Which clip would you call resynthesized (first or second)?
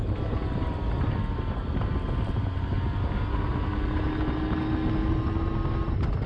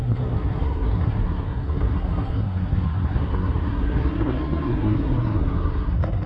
second